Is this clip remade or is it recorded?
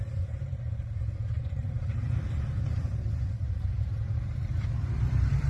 remade